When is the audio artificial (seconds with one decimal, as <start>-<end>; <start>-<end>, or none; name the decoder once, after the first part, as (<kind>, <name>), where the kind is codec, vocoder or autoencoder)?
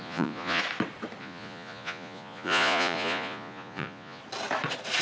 0.0-0.6 (vocoder, Vocos); 1.2-4.2